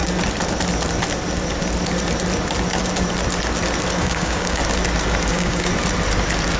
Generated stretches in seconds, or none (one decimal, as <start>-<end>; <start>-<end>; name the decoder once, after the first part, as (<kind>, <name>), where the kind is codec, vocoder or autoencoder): 4.0-4.6 (codec, DAC); 5.3-5.7